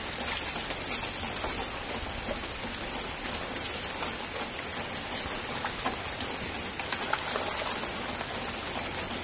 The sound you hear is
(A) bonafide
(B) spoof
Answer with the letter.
A